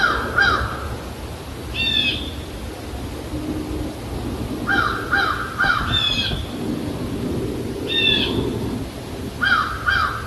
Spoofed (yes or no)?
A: no